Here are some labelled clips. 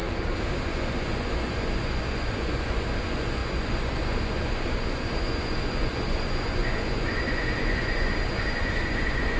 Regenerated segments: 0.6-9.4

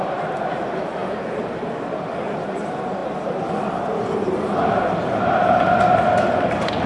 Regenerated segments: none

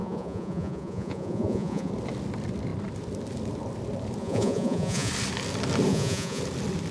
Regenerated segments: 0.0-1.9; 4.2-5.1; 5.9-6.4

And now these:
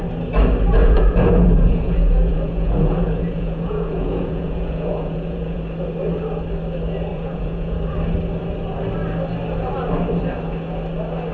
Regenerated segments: 0.8-5.6; 7.1-7.9

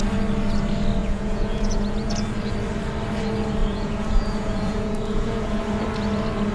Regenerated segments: 1.0-2.1; 3.6-5.6

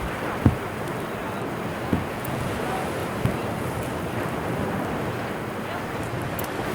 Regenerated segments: 1.9-2.5

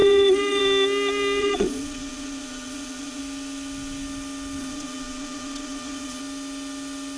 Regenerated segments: 0.0-0.6; 1.4-3.2; 4.6-6.2